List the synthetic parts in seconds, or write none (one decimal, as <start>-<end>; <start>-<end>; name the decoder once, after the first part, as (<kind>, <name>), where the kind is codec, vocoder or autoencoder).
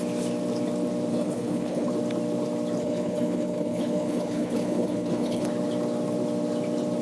1.1-1.9 (codec, HILCodec); 2.8-5.5